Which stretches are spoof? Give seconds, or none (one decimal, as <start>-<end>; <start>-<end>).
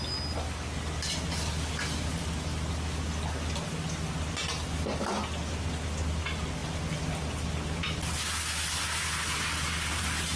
none